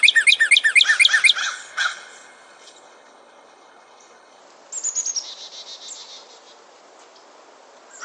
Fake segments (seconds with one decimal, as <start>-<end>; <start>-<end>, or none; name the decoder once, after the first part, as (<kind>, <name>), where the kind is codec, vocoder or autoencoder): 1.4-4.4 (codec, HILCodec)